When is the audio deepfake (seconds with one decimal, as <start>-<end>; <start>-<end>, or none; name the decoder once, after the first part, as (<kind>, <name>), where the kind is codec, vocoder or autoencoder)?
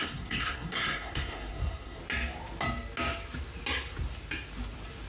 0.0-2.0 (codec, SNAC)